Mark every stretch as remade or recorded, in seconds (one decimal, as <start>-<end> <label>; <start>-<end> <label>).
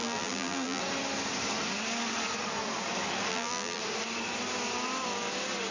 0.0-0.8 remade; 0.8-3.3 recorded; 3.3-3.8 remade; 3.8-5.7 recorded